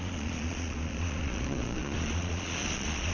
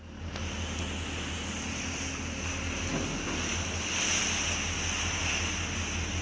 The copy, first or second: first